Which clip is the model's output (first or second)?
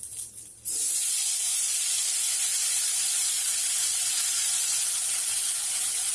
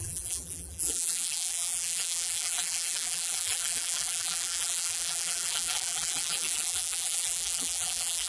second